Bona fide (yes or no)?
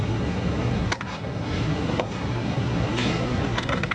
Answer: no